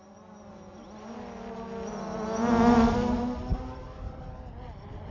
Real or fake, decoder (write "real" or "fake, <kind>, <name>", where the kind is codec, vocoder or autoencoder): real